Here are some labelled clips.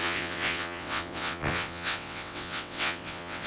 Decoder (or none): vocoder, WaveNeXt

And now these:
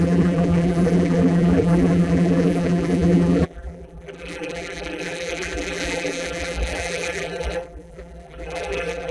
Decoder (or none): vocoder, BigVGAN v2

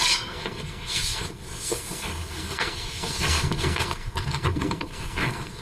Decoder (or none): codec, SNAC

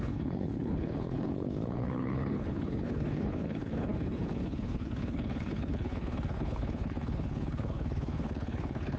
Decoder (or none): codec, HILCodec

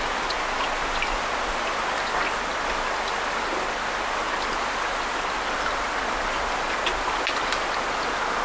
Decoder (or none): none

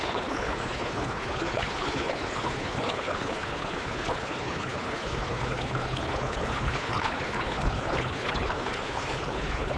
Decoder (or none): codec, HILCodec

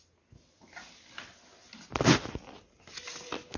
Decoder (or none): none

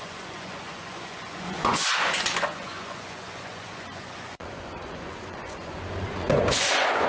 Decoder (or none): vocoder, Vocos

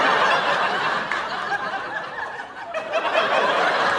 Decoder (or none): none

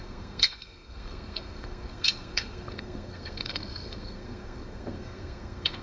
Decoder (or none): codec, SNAC